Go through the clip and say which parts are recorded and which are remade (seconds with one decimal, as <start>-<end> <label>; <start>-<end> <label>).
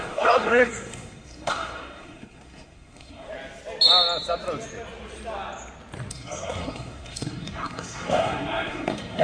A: 0.0-3.3 remade; 3.3-6.1 recorded; 6.1-9.2 remade